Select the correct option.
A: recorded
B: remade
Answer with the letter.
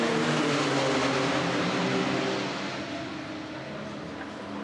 A